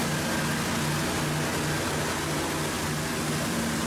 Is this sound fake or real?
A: real